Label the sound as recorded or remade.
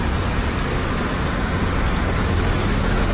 recorded